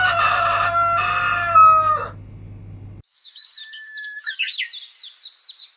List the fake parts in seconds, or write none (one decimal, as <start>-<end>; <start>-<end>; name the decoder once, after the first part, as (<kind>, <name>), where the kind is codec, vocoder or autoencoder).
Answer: 3.1-4.6 (autoencoder, DAC-VAE)